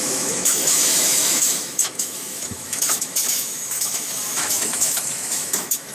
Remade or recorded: remade